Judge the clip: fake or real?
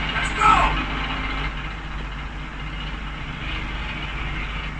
real